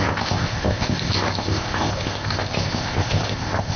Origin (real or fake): fake